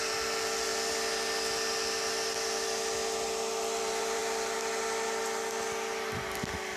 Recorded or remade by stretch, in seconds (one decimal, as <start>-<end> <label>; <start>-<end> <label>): 0.0-0.7 remade; 0.7-3.8 recorded; 3.8-4.2 remade; 4.2-6.1 recorded; 6.1-6.8 remade